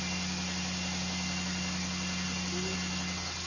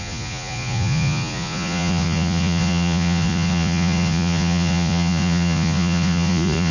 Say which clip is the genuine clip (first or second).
first